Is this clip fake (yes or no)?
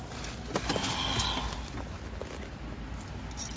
no